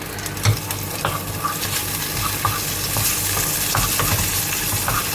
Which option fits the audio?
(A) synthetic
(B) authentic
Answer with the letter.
B